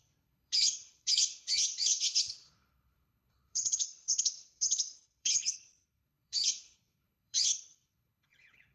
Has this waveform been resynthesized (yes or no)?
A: yes